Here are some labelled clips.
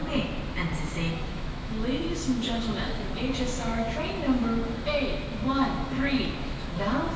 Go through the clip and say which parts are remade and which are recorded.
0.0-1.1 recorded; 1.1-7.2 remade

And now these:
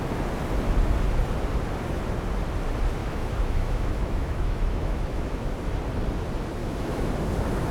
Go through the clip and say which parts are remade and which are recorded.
0.0-3.0 recorded; 3.0-5.5 remade; 5.5-6.6 recorded; 6.6-7.1 remade; 7.1-7.7 recorded

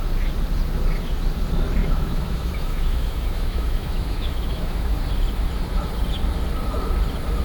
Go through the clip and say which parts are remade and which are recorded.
0.0-1.8 recorded; 1.8-5.0 remade; 5.0-7.4 recorded

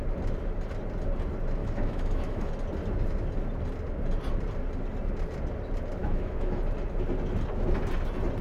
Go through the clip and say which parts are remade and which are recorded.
0.0-1.6 recorded; 1.6-2.5 remade; 2.5-6.0 recorded; 6.0-6.6 remade; 6.6-8.4 recorded

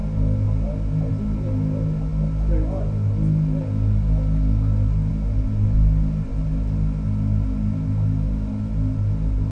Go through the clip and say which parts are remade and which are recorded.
0.0-9.5 recorded

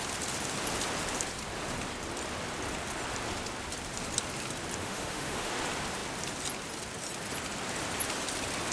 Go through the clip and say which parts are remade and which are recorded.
0.0-4.8 recorded; 4.8-5.5 remade; 5.5-8.7 recorded

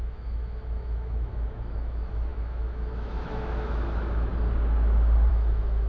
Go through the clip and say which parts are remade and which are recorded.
0.0-4.3 remade; 4.3-5.3 recorded; 5.3-5.9 remade

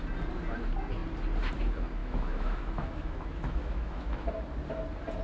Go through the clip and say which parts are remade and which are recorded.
0.0-2.0 recorded; 2.0-4.3 remade; 4.3-5.2 recorded